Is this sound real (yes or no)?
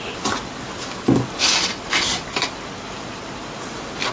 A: yes